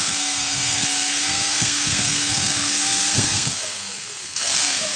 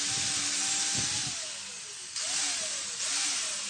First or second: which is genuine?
second